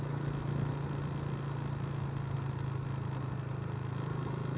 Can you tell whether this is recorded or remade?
recorded